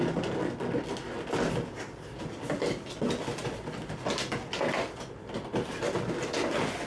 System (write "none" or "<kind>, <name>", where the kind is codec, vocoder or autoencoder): none